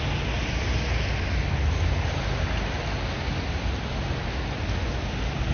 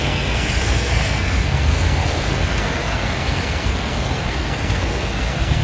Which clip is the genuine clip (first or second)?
first